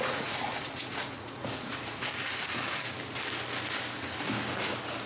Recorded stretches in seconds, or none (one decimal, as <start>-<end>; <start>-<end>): 2.1-5.1